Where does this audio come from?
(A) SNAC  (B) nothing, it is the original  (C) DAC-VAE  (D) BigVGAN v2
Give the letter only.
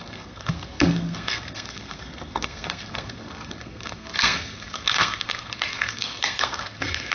A